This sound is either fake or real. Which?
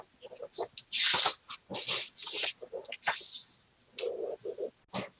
real